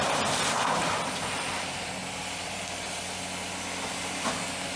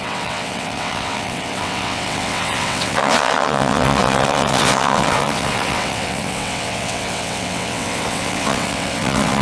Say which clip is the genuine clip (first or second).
first